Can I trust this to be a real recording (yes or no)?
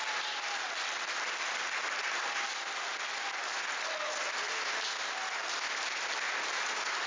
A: yes